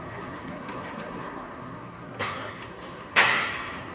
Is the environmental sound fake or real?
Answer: fake